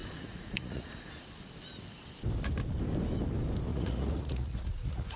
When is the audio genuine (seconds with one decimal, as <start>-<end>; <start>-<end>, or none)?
1.1-3.7